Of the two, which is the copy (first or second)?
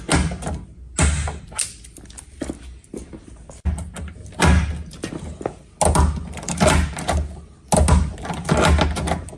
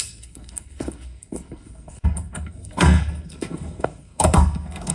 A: second